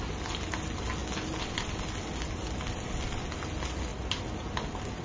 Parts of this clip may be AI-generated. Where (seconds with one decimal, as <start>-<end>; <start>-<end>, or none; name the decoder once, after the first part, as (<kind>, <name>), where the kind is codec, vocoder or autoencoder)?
none

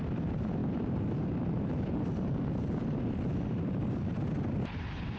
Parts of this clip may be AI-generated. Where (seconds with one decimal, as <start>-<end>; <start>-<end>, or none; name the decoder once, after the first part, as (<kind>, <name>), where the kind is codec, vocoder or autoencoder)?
none

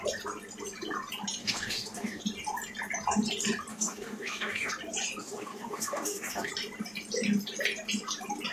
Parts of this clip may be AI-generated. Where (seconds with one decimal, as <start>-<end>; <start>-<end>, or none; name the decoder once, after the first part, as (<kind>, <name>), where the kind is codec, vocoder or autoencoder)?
1.4-2.2 (codec, DAC); 3.7-4.7; 5.2-6.5

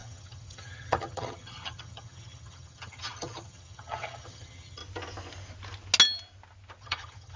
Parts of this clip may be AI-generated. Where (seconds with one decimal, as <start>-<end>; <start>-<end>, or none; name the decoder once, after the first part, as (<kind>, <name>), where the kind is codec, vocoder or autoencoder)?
0.0-4.8 (vocoder, HiFi-GAN); 6.8-7.4

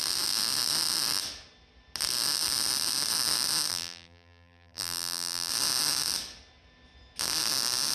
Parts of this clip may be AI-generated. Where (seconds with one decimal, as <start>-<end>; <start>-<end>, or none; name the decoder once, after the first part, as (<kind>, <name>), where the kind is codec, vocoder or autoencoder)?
3.7-5.5 (vocoder, BigVGAN v2)

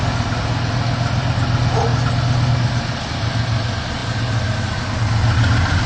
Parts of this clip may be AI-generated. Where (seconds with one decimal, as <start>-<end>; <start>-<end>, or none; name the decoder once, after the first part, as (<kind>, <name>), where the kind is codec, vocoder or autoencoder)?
none

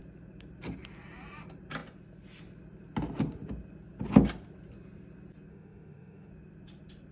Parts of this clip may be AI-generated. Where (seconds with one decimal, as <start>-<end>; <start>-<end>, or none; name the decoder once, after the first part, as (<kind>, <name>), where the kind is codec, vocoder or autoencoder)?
5.5-6.3 (autoencoder, DAC-VAE)

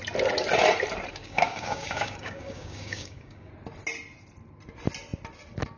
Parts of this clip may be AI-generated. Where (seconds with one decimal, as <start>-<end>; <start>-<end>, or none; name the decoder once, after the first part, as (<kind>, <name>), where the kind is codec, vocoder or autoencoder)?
1.1-3.5 (codec, DAC)